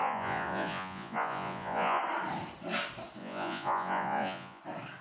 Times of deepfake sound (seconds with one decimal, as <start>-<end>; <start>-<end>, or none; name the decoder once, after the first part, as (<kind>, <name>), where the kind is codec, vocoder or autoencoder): 0.0-2.0 (vocoder, Vocos); 3.2-4.6